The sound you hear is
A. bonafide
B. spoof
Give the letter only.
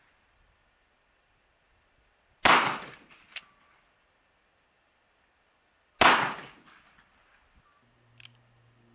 A